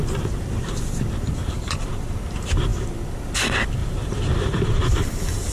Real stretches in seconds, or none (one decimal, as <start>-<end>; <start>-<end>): 0.0-1.4; 1.9-3.8